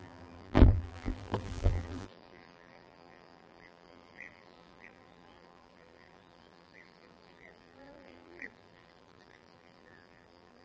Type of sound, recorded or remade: remade